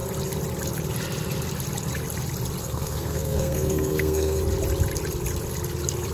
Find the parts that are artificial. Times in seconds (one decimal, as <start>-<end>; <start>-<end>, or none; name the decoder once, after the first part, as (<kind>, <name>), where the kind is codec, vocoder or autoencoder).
2.6-4.4 (codec, SNAC)